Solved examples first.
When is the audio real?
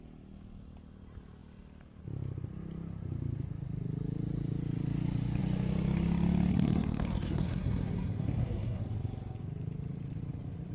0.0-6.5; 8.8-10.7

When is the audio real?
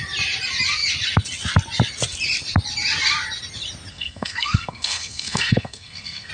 0.0-3.9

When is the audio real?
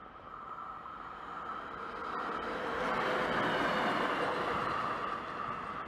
0.0-5.9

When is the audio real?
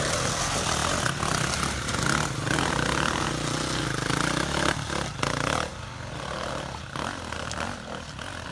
0.0-8.5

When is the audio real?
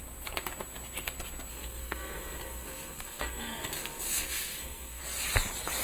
0.0-1.5; 5.0-5.8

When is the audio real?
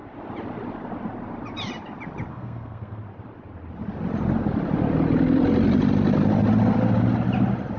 0.0-2.3; 3.0-7.8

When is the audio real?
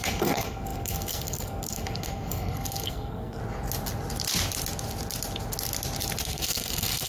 3.4-6.2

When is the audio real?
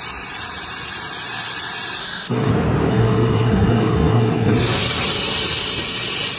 0.0-2.0; 2.5-2.9; 4.8-6.4